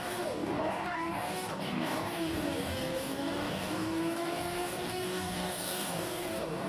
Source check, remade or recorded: remade